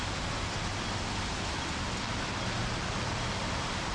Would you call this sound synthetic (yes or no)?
no